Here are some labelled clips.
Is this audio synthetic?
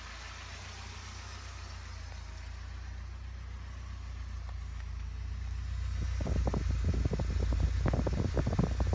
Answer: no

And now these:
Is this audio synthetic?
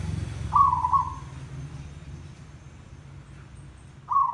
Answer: no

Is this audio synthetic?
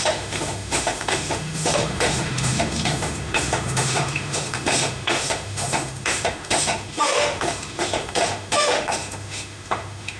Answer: yes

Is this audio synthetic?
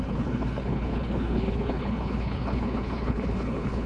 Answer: yes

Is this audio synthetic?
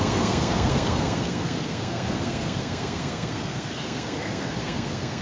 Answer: yes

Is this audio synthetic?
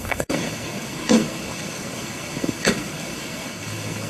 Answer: yes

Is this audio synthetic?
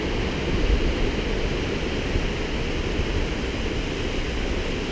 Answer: no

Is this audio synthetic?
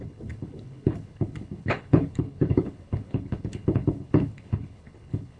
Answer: yes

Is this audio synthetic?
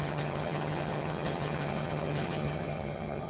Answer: yes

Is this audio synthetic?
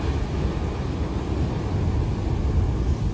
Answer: no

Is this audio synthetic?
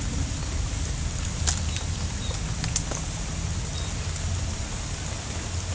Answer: no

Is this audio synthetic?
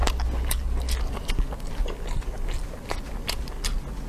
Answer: no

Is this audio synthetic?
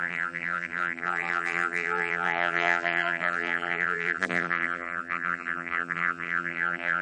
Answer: yes